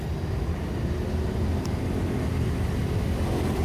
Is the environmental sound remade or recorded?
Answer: recorded